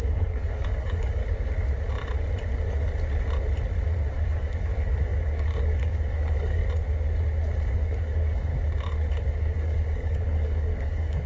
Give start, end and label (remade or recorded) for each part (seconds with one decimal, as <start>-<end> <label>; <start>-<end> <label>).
0.0-1.2 remade; 1.2-4.1 recorded; 4.1-6.6 remade; 6.6-7.7 recorded; 7.7-8.5 remade; 8.5-9.3 recorded; 9.3-11.3 remade